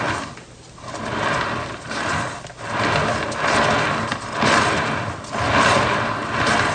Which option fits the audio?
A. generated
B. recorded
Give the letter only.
B